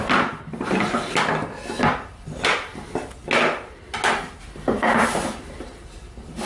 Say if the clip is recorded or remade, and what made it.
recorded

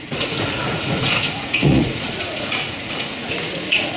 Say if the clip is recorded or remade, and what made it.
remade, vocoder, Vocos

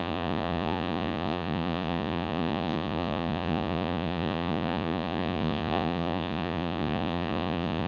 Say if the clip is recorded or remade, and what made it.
remade, vocoder, Vocos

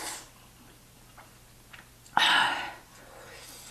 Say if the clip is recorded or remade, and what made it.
recorded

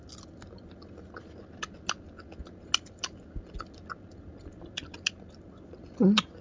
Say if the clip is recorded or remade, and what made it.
recorded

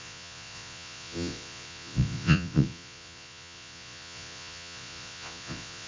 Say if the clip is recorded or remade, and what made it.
remade, vocoder, Vocos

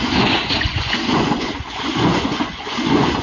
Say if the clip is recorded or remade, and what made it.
remade, vocoder, Vocos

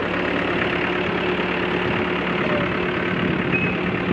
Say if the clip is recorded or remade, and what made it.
recorded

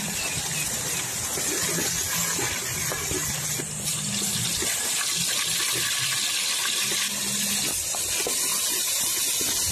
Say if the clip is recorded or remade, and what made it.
recorded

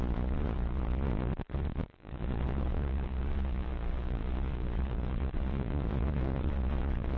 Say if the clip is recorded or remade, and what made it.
remade, vocoder, Vocos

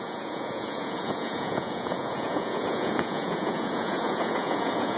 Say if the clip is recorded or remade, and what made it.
remade, vocoder, Vocos